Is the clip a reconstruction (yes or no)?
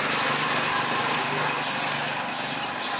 no